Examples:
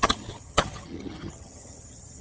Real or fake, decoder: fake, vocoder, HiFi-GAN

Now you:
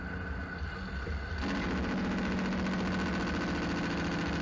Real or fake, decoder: real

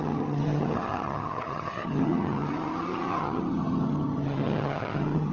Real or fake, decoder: fake, vocoder, HiFi-GAN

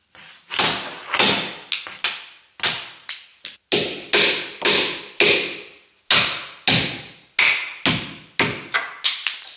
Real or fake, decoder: real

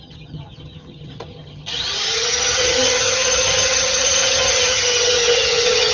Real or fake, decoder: fake, vocoder, HiFi-GAN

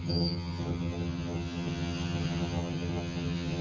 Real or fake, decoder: fake, vocoder, HiFi-GAN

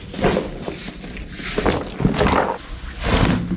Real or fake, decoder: real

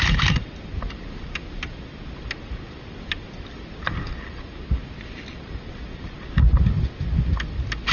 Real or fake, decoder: real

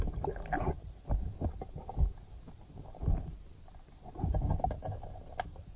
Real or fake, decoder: real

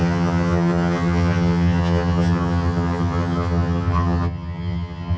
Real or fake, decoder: fake, vocoder, HiFi-GAN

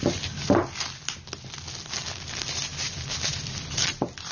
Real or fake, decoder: real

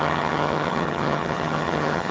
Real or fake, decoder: fake, vocoder, HiFi-GAN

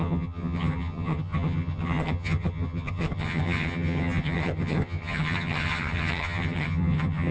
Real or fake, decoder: fake, vocoder, HiFi-GAN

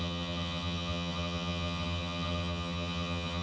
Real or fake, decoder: fake, vocoder, HiFi-GAN